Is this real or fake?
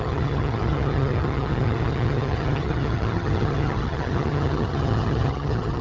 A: fake